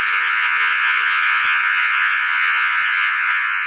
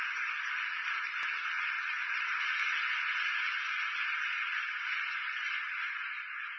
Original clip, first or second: second